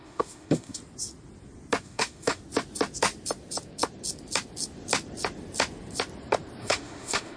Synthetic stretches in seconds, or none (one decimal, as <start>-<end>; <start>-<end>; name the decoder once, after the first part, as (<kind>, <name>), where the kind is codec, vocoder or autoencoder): 0.0-0.8 (autoencoder, DAC-VAE); 1.8-2.4; 6.6-7.4